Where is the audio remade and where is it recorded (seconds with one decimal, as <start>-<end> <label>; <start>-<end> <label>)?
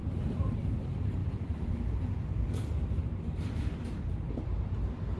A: 0.0-0.6 recorded; 0.6-5.2 remade